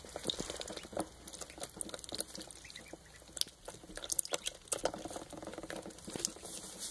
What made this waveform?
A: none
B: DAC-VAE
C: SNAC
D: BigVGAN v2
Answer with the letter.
A